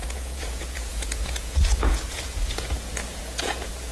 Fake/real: fake